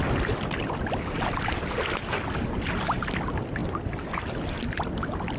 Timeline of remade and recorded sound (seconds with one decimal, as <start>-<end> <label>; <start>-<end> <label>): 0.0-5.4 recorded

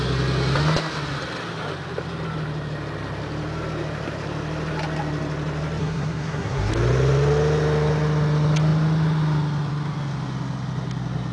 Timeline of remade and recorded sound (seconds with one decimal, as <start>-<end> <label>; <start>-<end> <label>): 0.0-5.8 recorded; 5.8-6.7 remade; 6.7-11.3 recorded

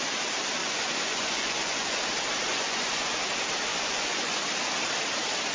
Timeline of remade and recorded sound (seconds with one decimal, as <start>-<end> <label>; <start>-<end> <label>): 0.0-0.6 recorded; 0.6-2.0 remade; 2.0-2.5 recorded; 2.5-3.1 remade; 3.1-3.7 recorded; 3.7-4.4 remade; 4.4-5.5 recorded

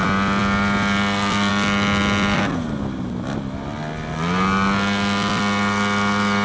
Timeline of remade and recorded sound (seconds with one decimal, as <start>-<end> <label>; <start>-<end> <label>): 0.0-6.4 recorded